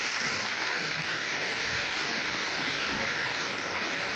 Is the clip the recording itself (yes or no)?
no